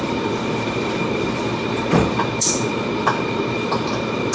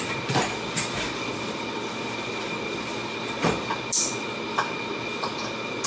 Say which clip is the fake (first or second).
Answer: first